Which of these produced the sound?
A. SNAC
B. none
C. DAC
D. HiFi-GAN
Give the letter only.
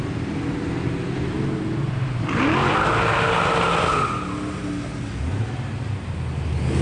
B